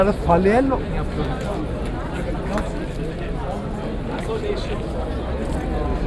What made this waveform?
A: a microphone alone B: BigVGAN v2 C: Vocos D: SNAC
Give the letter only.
A